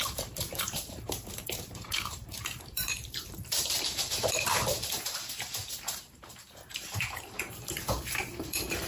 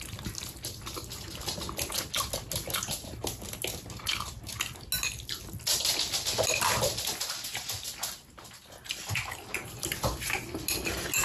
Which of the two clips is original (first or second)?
second